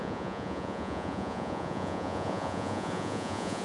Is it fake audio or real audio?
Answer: fake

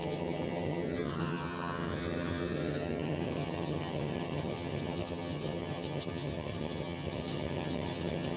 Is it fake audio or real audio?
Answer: fake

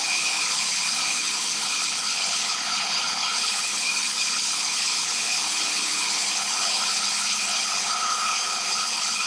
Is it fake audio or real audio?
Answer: fake